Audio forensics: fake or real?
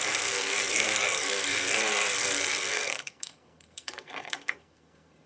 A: fake